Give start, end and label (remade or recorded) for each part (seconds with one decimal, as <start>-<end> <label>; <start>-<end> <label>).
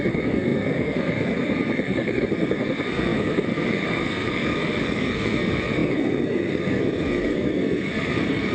0.0-8.5 remade